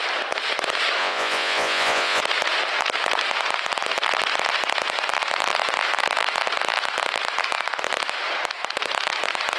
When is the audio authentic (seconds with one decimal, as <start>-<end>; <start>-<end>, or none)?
0.0-1.0; 2.2-9.6